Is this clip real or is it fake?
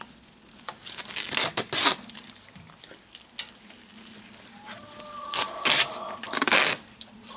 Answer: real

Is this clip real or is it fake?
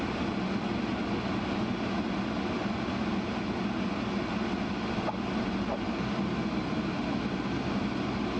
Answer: real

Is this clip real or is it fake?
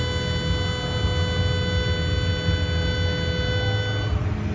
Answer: real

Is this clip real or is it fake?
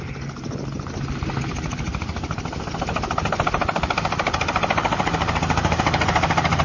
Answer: real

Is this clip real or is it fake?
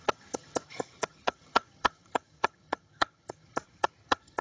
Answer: fake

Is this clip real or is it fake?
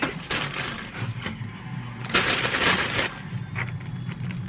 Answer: real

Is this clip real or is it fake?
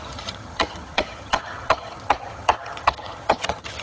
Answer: fake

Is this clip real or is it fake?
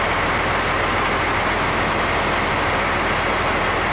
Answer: real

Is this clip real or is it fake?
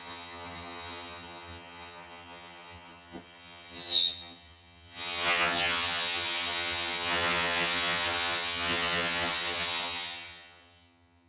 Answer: fake